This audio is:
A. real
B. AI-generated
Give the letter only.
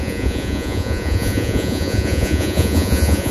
B